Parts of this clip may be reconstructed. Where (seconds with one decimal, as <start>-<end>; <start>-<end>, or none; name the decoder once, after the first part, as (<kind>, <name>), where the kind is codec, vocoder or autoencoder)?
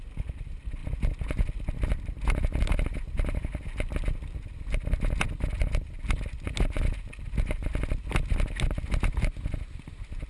none